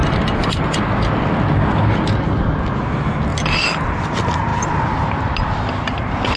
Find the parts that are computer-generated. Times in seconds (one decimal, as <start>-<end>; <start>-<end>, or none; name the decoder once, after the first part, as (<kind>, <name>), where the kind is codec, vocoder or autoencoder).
none